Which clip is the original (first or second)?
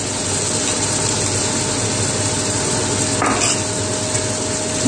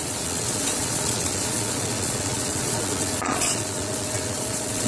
first